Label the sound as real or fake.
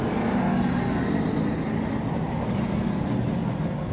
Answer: real